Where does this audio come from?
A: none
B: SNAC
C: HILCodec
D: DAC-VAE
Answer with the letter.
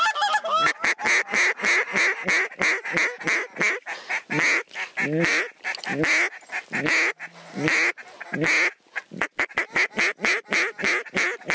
A